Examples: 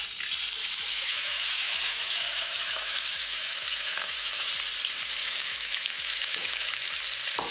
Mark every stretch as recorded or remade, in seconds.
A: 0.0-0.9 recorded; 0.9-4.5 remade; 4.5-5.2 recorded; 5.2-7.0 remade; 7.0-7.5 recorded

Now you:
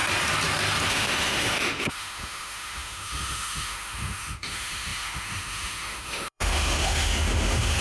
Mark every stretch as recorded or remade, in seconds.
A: 0.0-0.9 recorded; 0.9-7.8 remade

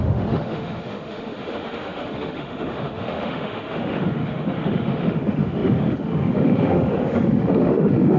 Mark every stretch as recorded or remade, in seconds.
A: 0.0-8.2 remade

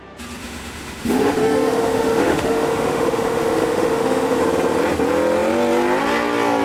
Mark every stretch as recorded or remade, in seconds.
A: 0.0-0.4 recorded; 0.4-4.4 remade; 4.4-6.6 recorded